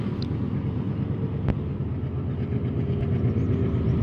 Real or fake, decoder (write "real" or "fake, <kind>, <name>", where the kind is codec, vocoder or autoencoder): real